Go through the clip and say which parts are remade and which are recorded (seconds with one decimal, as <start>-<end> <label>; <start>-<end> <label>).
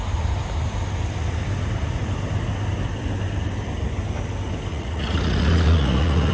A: 0.0-4.7 recorded; 4.7-6.3 remade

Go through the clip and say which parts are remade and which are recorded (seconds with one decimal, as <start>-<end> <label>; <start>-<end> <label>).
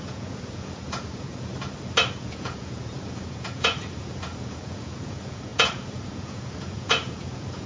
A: 0.0-1.5 remade; 1.5-2.1 recorded; 2.1-7.7 remade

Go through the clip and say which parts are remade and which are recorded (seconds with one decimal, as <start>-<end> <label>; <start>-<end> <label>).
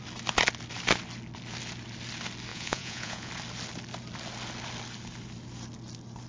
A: 0.0-2.5 recorded; 2.5-3.3 remade; 3.3-6.3 recorded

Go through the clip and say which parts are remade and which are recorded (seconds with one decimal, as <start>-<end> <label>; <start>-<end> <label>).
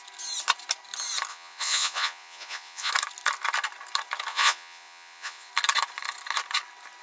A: 0.0-1.3 recorded; 1.3-2.9 remade; 2.9-4.3 recorded; 4.3-5.5 remade; 5.5-7.0 recorded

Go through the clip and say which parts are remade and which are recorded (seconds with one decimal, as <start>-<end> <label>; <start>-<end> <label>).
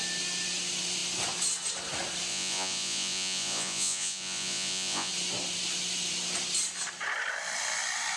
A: 0.0-2.3 recorded; 2.3-5.1 remade; 5.1-8.2 recorded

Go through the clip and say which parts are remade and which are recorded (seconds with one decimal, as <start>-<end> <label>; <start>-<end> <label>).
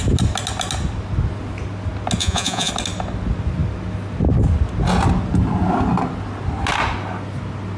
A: 0.0-2.2 recorded; 2.2-2.7 remade; 2.7-7.8 recorded